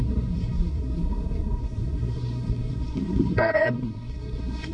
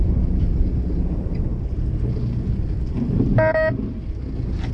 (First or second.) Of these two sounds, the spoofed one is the first